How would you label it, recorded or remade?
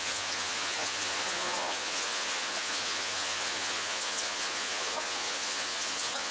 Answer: remade